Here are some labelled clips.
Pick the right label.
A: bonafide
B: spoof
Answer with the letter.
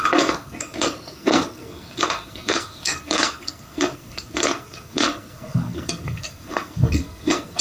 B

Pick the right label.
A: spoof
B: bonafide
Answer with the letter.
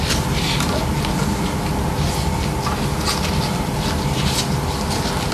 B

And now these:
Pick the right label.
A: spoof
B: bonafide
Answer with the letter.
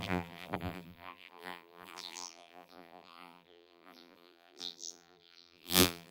A